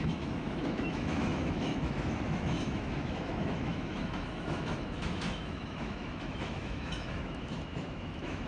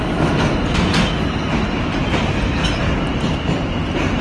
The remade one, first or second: first